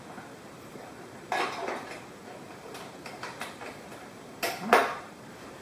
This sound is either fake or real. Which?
fake